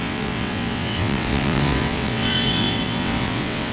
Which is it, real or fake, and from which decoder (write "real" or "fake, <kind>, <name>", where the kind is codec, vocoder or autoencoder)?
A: fake, vocoder, WaveNeXt